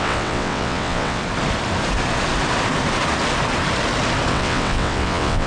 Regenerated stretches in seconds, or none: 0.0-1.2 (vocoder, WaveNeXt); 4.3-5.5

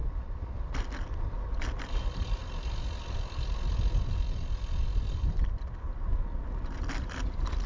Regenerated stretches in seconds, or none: 1.5-2.4 (vocoder, BigVGAN v2); 6.9-7.7